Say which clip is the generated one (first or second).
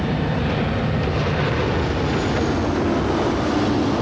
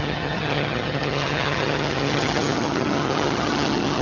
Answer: second